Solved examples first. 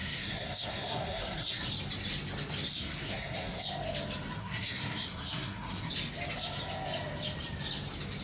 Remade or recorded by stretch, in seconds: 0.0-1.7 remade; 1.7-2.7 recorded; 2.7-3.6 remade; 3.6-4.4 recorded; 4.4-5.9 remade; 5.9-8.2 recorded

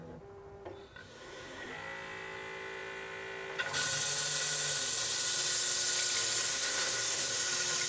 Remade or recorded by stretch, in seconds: 0.0-1.0 recorded; 1.0-1.7 remade; 1.7-6.5 recorded; 6.5-7.3 remade; 7.3-7.9 recorded

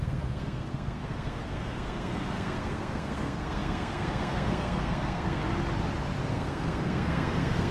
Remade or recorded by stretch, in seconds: 0.0-5.4 remade; 5.4-6.3 recorded; 6.3-7.7 remade

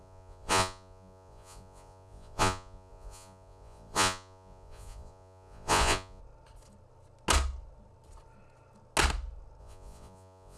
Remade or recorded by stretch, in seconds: 0.0-6.2 remade; 6.2-9.6 recorded; 9.6-10.6 remade

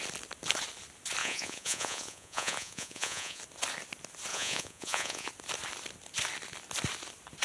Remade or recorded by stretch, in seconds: 0.0-1.2 recorded; 1.2-3.4 remade; 3.4-4.3 recorded; 4.3-5.3 remade; 5.3-7.4 recorded

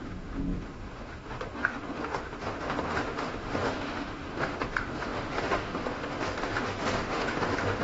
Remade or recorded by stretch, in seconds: 0.0-7.8 remade

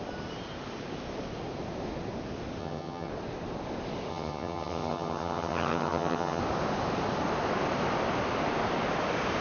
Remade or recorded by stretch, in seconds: 0.0-2.6 recorded; 2.6-3.1 remade; 3.1-4.1 recorded; 4.1-6.4 remade; 6.4-9.4 recorded

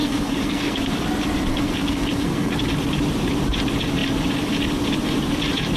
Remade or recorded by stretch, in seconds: 0.0-0.8 remade; 0.8-1.5 recorded; 1.5-2.6 remade; 2.6-5.8 recorded